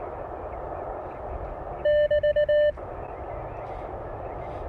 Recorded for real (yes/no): yes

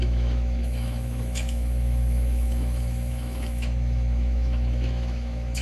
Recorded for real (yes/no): no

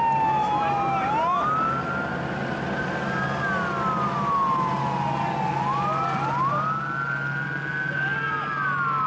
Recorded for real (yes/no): yes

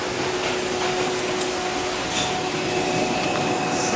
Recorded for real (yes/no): yes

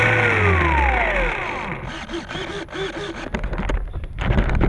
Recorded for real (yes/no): yes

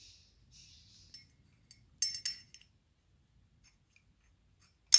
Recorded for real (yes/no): yes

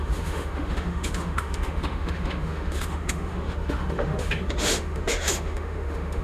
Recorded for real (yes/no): no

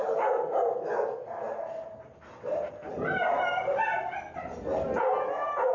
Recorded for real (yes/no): yes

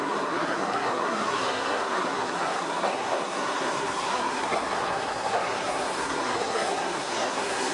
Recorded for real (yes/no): no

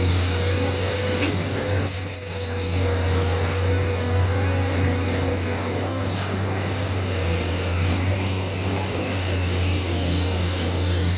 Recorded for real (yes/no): no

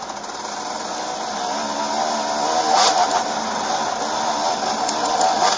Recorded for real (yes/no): yes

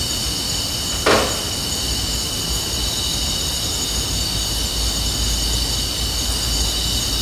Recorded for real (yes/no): yes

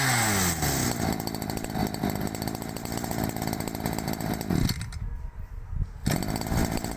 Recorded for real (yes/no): yes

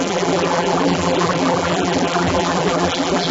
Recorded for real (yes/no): no